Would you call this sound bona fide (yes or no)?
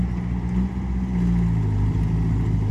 yes